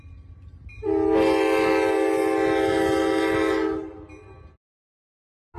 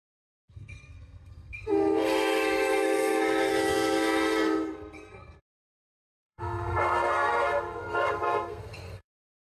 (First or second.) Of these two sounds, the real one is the first